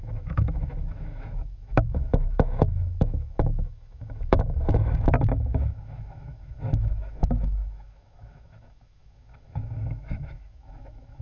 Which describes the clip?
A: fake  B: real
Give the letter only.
A